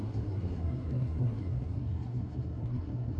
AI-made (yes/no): yes